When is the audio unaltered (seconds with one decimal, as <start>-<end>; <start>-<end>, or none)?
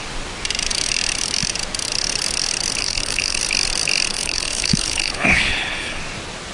0.0-2.8; 3.4-4.1; 6.0-6.5